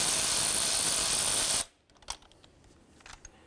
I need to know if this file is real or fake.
real